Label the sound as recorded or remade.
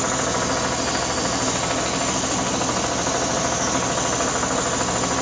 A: recorded